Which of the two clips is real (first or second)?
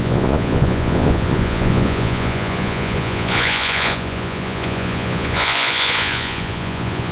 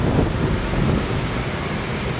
second